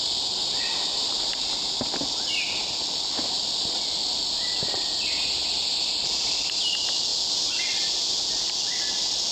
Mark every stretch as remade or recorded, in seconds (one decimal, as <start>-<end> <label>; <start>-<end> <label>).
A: 0.0-9.3 recorded